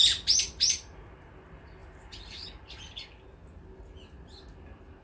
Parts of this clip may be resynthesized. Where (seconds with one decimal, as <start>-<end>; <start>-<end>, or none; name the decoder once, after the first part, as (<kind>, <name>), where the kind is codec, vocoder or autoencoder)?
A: none